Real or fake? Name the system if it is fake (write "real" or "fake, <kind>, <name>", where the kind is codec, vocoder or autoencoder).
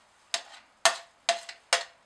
real